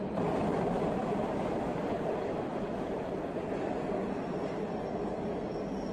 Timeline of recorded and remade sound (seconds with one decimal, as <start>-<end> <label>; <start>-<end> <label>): 0.0-5.9 recorded